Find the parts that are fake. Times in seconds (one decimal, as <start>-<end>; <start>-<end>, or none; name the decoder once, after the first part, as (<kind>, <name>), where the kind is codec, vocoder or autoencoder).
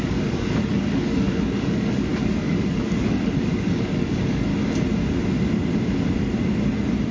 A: 0.0-4.5 (codec, DAC)